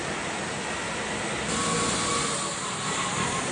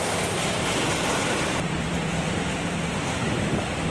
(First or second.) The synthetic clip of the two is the second